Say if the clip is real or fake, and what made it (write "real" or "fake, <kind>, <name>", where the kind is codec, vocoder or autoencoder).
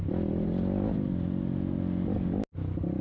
real